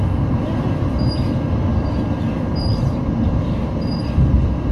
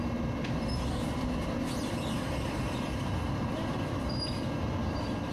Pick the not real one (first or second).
second